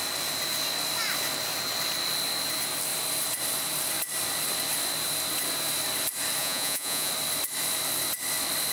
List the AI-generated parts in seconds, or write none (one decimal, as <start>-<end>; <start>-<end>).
6.4-7.1